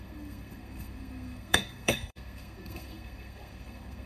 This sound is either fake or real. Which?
fake